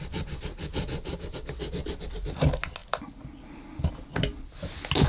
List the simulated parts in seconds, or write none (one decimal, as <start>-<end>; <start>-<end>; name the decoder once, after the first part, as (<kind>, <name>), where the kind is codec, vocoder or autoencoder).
none